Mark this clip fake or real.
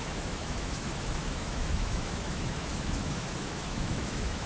fake